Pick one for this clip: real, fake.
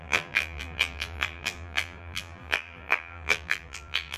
fake